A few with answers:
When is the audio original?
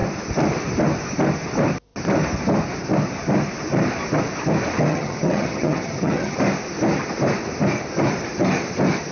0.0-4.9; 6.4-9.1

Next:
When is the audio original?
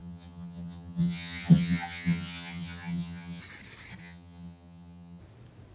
3.4-4.0; 5.2-5.7